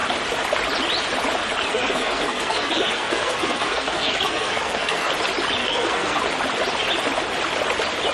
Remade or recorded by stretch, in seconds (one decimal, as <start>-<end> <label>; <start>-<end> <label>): 0.0-1.7 recorded; 1.7-5.1 remade; 5.1-5.6 recorded; 5.6-6.2 remade; 6.2-8.1 recorded